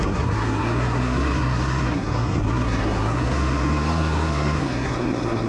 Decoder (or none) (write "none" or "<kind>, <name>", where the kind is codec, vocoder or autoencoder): codec, SNAC